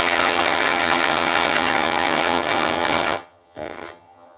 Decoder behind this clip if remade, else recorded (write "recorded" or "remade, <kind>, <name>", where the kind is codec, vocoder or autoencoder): remade, vocoder, HiFi-GAN